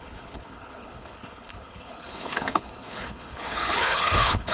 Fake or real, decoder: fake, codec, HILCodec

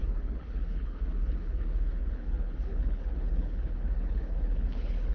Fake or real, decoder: fake, codec, HILCodec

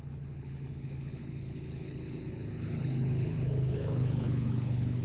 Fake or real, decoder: fake, codec, HILCodec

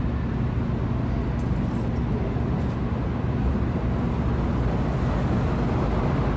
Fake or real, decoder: real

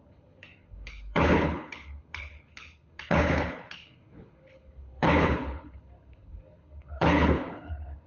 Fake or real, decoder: fake, codec, HILCodec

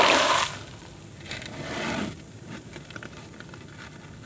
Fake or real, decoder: real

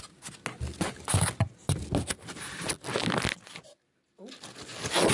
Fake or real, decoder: real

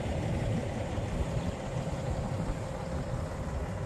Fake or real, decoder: real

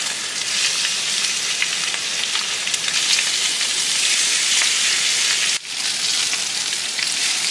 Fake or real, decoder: real